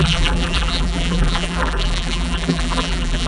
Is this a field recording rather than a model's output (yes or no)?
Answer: no